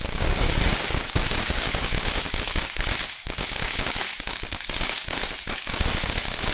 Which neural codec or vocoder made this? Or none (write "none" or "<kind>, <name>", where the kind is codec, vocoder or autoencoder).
codec, DAC